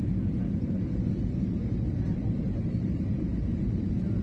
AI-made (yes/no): yes